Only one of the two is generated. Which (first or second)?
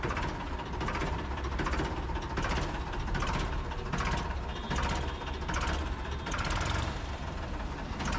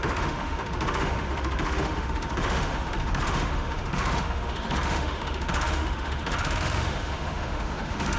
second